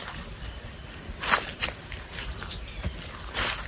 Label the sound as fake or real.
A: real